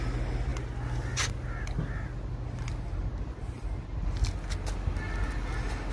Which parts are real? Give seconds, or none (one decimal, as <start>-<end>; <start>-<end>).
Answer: 0.0-5.9